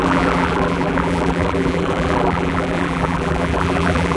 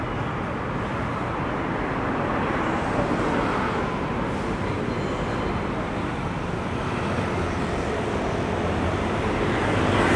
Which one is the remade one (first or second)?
first